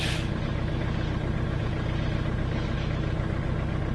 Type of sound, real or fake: fake